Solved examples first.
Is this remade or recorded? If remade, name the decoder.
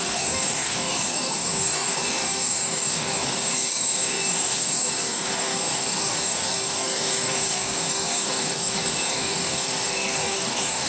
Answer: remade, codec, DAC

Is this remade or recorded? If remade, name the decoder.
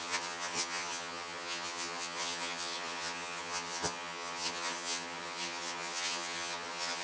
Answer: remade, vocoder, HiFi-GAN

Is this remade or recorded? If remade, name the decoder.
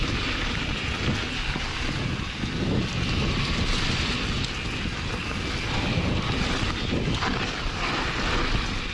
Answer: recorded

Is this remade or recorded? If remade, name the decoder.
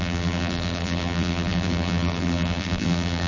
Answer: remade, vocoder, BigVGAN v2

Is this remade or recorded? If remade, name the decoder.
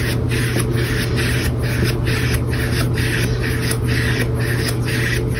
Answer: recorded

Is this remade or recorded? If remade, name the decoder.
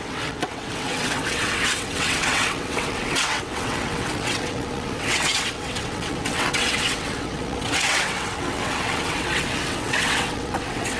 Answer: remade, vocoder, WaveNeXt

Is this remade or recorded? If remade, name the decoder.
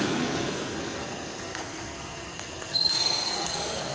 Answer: remade, codec, SNAC